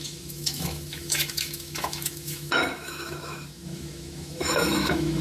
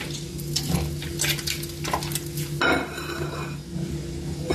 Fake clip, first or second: first